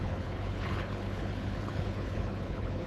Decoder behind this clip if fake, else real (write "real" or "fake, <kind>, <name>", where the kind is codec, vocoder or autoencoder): fake, codec, HILCodec